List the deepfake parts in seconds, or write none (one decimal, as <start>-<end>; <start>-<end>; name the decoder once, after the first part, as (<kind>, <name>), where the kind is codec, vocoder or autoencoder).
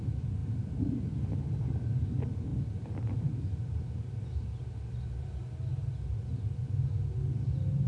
none